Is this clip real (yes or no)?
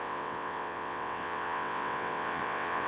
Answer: no